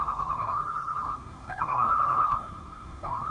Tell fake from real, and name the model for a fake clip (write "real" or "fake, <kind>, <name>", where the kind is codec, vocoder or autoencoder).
fake, codec, SNAC